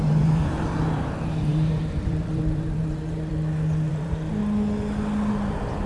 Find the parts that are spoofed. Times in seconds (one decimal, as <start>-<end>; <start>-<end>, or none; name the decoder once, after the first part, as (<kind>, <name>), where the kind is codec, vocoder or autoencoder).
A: 0.0-3.3 (vocoder, BigVGAN v2); 3.9-4.4; 5.3-5.9